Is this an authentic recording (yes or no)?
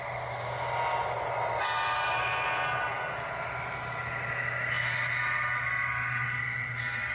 yes